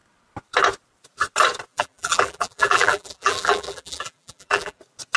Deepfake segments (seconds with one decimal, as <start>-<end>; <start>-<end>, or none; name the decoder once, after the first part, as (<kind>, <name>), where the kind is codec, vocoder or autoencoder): 1.7-4.8 (vocoder, BigVGAN v2)